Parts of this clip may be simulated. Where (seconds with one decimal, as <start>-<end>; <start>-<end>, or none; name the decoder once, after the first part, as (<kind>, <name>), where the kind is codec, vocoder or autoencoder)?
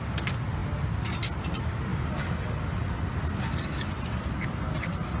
none